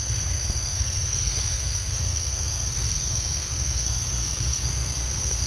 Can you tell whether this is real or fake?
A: fake